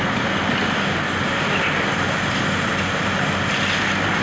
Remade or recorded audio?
recorded